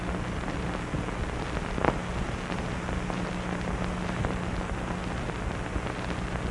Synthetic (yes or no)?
no